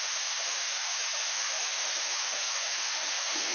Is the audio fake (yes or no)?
yes